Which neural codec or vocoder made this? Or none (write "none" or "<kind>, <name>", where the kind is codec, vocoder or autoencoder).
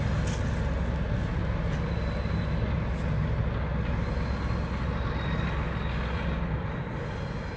none